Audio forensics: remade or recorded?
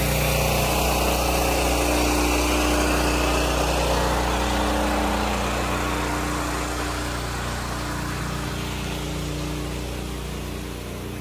recorded